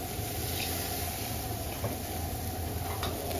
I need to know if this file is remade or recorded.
recorded